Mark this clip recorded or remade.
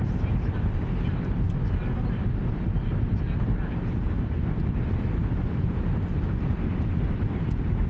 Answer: recorded